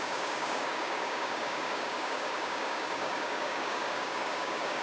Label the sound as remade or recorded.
remade